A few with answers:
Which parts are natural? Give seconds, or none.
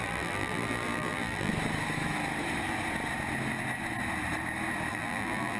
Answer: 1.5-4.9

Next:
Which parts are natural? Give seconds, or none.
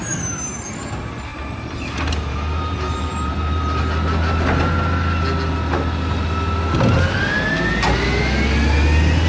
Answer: 0.0-1.3; 3.8-9.3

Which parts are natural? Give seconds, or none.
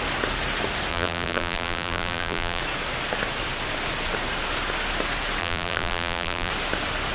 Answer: 0.0-0.9; 2.6-5.4; 6.5-7.1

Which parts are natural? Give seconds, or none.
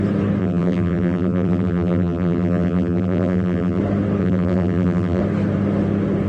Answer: 0.0-0.4; 3.8-4.2; 5.2-6.3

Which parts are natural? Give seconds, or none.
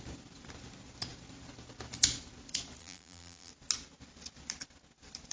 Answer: 0.0-2.8; 3.5-5.3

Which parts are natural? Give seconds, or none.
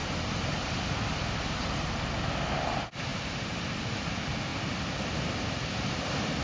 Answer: 0.0-3.1; 3.8-6.4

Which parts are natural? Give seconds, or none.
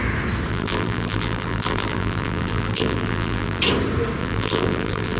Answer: 0.0-0.5; 3.6-4.2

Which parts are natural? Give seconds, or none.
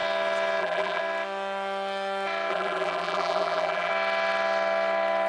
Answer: 0.0-0.6; 1.0-2.5; 3.9-5.3